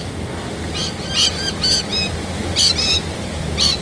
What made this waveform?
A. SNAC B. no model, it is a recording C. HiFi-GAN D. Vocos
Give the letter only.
B